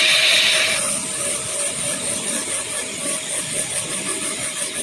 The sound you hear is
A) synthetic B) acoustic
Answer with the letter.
B